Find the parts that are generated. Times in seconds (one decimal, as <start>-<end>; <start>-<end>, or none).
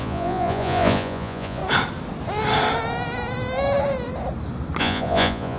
0.0-1.6; 4.8-5.6